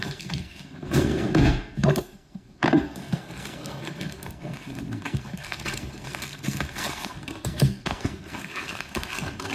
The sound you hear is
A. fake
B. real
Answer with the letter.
A